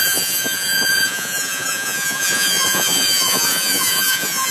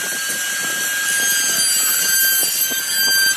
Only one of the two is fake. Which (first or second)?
first